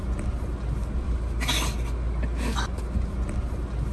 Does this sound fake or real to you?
real